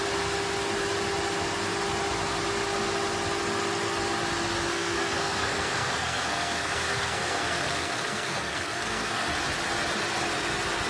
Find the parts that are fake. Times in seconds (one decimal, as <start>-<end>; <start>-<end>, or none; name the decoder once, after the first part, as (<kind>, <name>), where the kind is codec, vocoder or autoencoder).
4.7-9.3 (codec, SNAC)